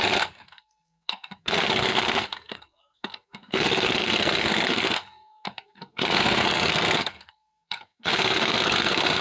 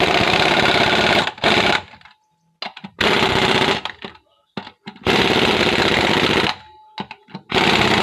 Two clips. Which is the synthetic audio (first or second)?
first